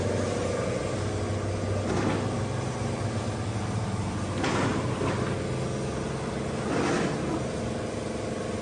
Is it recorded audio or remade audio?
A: recorded